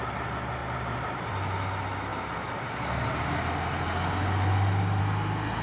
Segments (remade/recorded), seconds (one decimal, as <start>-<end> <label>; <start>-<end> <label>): 0.0-0.6 recorded; 0.6-1.3 remade; 1.3-5.6 recorded